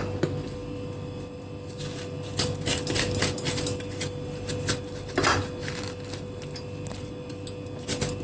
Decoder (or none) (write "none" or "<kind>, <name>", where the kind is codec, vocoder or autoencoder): none